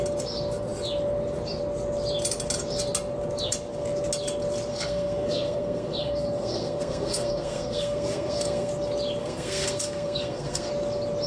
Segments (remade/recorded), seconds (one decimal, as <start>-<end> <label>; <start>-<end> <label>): 0.0-4.7 recorded; 4.7-8.7 remade; 8.7-9.2 recorded; 9.2-10.7 remade; 10.7-11.3 recorded